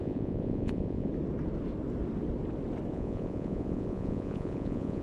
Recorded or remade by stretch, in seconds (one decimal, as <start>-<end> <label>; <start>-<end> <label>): 0.0-1.1 remade; 1.1-2.9 recorded; 2.9-5.0 remade